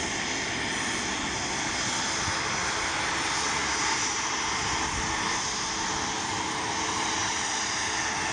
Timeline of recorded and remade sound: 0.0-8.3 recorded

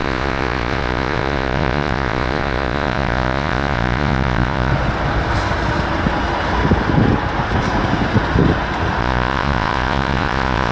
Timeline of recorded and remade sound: 0.0-4.7 remade; 4.7-9.0 recorded; 9.0-10.7 remade

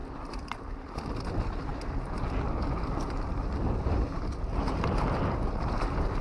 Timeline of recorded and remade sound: 0.0-6.2 recorded